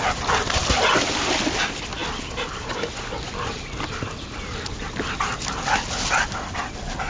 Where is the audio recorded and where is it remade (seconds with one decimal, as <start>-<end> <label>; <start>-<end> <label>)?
0.0-7.1 recorded